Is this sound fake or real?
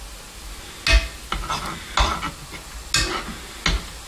real